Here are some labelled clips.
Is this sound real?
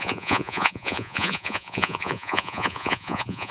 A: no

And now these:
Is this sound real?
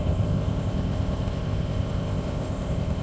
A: no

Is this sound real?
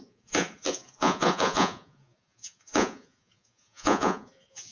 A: no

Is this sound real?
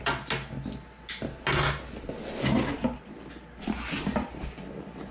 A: yes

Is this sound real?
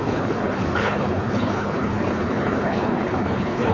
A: no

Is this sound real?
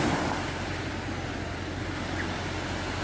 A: yes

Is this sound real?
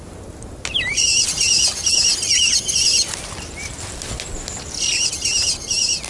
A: yes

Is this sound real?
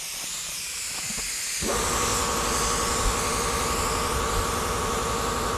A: yes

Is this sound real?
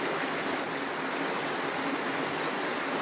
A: yes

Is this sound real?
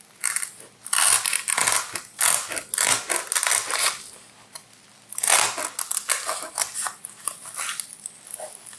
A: yes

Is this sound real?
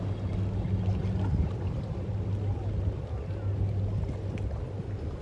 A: yes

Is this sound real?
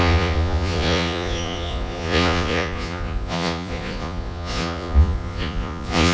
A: no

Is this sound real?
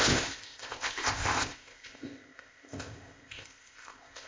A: no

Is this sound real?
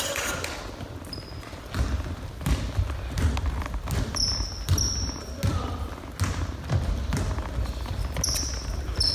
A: yes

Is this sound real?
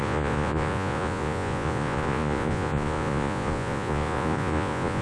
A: no